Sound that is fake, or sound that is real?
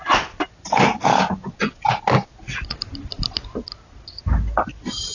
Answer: real